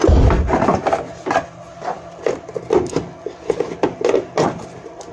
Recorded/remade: recorded